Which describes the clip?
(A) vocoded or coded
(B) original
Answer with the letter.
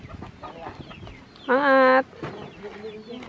B